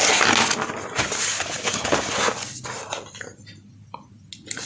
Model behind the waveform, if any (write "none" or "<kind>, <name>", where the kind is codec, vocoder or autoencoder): none